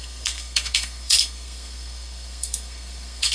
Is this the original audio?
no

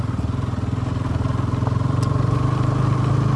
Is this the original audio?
yes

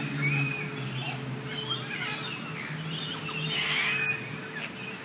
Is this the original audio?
yes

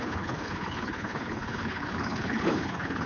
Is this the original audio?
no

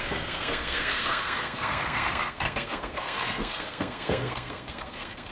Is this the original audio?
no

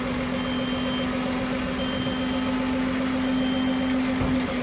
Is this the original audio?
yes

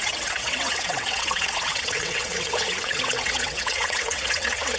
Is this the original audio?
no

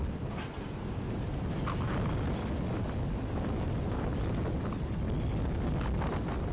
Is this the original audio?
yes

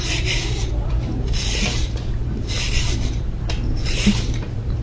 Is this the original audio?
no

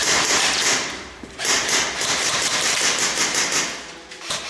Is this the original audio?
yes